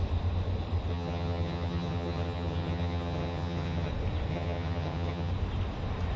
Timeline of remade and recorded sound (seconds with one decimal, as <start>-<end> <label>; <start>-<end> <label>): 0.0-0.9 recorded; 0.9-3.9 remade; 3.9-4.3 recorded; 4.3-5.3 remade; 5.3-6.2 recorded